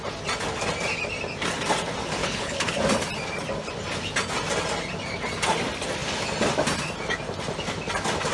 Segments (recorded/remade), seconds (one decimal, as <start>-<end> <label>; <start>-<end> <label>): 0.0-2.2 recorded; 2.2-2.8 remade; 2.8-8.3 recorded